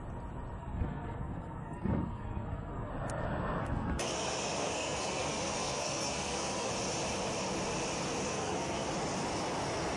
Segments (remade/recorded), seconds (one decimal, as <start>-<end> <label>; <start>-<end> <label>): 0.0-0.6 recorded; 0.6-2.9 remade; 2.9-3.6 recorded; 3.6-6.7 remade; 6.7-8.3 recorded; 8.3-8.9 remade; 8.9-10.0 recorded